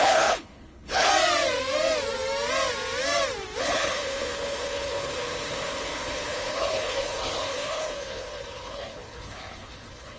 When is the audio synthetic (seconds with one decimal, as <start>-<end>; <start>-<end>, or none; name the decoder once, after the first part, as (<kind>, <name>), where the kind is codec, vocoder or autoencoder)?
0.0-1.1 (codec, HILCodec); 3.6-10.2